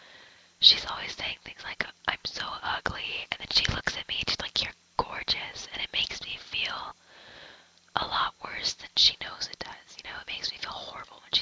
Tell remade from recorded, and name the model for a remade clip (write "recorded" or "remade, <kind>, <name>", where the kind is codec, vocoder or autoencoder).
recorded